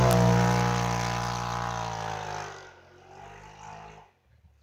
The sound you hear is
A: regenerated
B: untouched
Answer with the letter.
B